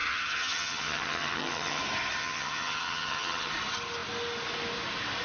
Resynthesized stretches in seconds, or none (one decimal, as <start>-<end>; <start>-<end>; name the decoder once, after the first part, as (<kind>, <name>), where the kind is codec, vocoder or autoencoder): 0.0-1.8 (vocoder, HiFi-GAN); 2.2-3.5